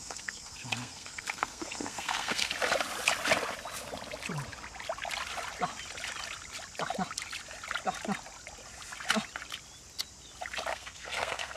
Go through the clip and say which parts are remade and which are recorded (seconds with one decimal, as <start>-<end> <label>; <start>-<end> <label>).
0.0-2.5 remade; 2.5-10.7 recorded; 10.7-11.6 remade